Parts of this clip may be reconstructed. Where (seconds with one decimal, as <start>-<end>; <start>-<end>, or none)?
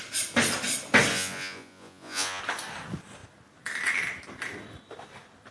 1.1-2.4